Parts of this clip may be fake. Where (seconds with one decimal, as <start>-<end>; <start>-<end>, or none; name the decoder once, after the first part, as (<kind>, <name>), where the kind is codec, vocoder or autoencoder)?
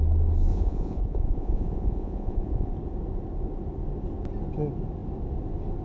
0.5-2.7 (vocoder, Vocos)